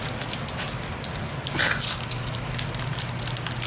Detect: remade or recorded recorded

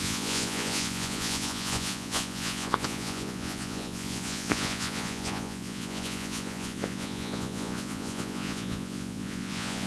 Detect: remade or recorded remade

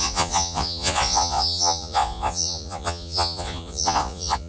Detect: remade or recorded remade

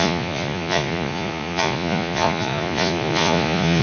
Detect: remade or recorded remade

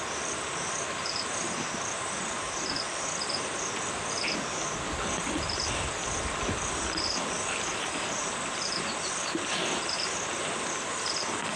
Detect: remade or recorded recorded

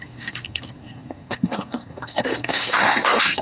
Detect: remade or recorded remade